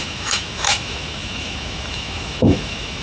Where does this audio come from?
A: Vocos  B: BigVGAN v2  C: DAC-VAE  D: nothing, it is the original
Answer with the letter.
C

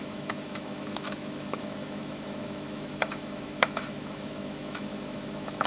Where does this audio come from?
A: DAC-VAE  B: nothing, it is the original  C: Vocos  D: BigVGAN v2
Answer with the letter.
A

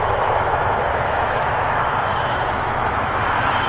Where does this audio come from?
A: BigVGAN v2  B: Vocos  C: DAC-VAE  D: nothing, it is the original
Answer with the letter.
C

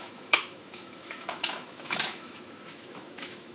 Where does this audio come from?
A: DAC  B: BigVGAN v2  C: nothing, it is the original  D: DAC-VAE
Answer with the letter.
D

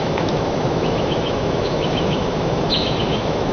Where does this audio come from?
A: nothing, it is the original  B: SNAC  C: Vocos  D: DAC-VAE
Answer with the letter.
D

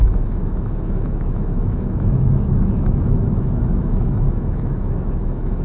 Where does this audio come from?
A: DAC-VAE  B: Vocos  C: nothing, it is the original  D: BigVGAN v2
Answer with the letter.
A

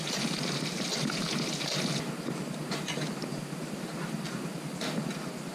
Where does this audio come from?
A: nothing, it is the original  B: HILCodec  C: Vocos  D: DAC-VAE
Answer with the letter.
A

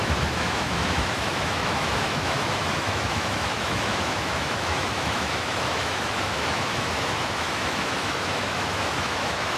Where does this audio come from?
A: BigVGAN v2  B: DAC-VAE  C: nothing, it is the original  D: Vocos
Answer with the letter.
B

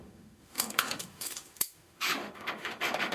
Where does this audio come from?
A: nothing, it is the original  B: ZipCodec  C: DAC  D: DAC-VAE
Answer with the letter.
D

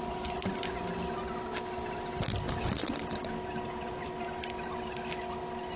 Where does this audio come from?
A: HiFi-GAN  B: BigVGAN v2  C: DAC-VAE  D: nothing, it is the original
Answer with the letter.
D